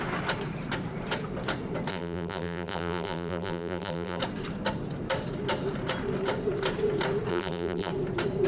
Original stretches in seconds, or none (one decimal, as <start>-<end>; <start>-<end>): 0.0-1.9; 4.2-7.3; 7.9-8.5